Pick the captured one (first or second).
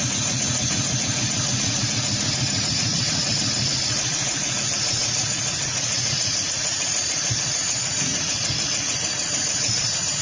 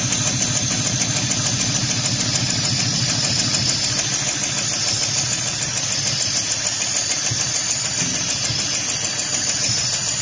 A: second